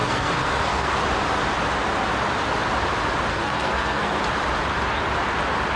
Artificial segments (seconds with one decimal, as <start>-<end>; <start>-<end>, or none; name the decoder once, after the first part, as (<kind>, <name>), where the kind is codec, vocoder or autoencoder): 0.0-0.9 (codec, SNAC); 3.3-4.2

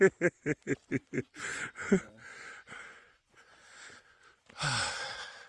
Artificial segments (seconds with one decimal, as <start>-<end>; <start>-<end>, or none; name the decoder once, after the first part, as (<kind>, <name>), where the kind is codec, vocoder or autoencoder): 1.5-4.4 (vocoder, Vocos)

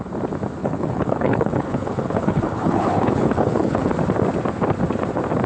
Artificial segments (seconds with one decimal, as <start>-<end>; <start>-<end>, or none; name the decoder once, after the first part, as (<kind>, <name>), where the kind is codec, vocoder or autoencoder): 0.6-3.9 (codec, HILCodec)

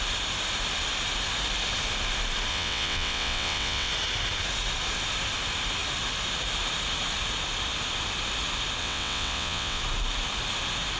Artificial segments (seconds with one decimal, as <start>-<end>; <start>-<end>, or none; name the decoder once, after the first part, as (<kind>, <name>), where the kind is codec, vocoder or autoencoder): 2.5-3.9 (vocoder, WaveNeXt); 8.8-9.8

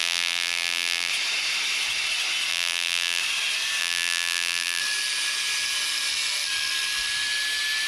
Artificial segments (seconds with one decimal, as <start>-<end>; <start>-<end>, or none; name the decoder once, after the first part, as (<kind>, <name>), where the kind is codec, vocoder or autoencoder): 0.0-1.1 (vocoder, BigVGAN v2); 2.5-3.2; 3.8-4.8

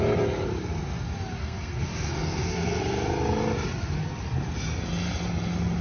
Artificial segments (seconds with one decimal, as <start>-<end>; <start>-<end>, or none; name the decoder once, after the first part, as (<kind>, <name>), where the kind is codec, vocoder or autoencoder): 1.4-2.8 (codec, SNAC)